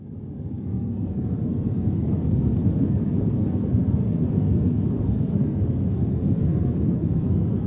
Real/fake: fake